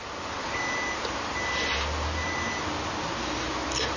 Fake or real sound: real